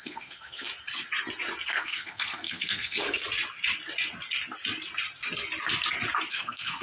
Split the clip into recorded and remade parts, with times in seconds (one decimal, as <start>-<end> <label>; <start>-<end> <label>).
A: 0.0-0.7 remade; 0.7-1.7 recorded; 1.7-3.2 remade; 3.2-6.3 recorded; 6.3-6.8 remade